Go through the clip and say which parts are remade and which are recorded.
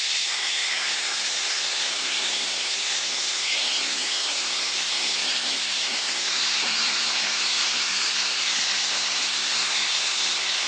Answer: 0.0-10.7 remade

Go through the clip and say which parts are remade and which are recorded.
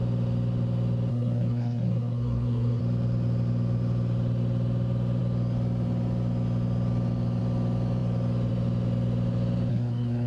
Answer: 0.0-1.1 recorded; 1.1-2.8 remade; 2.8-9.7 recorded; 9.7-10.3 remade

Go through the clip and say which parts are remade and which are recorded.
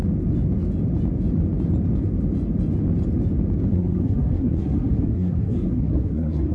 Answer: 0.0-3.7 recorded; 3.7-6.5 remade